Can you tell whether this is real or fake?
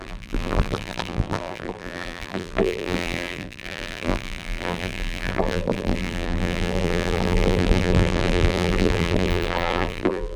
fake